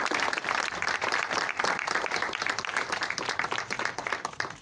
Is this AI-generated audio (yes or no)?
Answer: yes